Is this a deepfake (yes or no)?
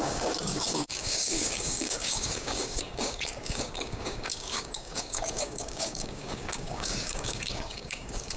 yes